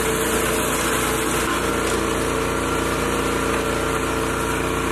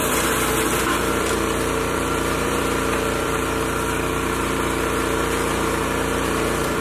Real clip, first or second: first